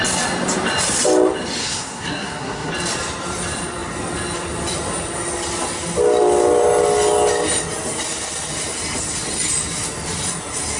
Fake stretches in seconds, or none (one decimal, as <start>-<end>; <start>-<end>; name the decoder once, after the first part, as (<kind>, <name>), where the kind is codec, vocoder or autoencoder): 1.6-2.7 (codec, SNAC)